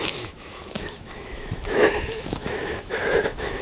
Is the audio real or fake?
fake